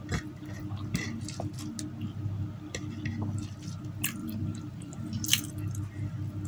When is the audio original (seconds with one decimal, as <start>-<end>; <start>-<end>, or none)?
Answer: 0.0-4.2; 5.5-6.5